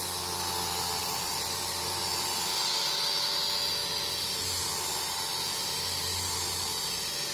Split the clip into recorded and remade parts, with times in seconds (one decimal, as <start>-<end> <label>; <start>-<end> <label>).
0.0-1.0 recorded; 1.0-2.0 remade; 2.0-7.3 recorded